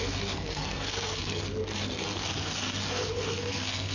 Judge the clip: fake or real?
fake